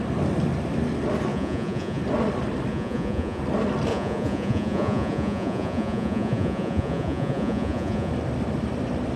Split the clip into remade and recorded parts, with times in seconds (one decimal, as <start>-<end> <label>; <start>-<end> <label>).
0.0-1.3 recorded; 1.3-2.0 remade; 2.0-2.7 recorded; 2.7-3.4 remade; 3.4-3.9 recorded; 3.9-8.1 remade; 8.1-9.2 recorded